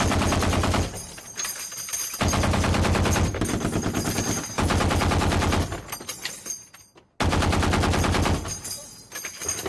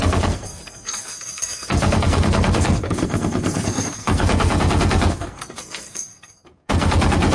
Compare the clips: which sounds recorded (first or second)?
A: first